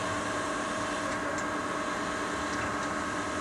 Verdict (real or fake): real